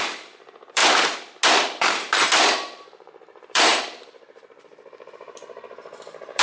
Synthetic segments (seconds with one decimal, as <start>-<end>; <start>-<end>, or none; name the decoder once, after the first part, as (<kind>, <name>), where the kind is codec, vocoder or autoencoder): 0.0-0.8 (vocoder, BigVGAN v2); 1.8-6.4